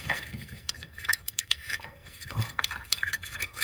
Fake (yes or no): yes